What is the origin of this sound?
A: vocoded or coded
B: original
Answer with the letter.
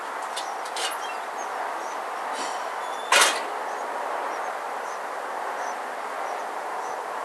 B